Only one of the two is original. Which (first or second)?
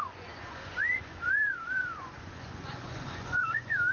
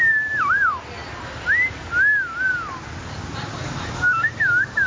second